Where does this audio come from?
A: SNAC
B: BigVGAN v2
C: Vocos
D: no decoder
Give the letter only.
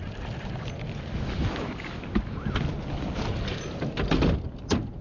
D